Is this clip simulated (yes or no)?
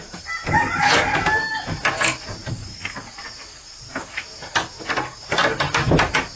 no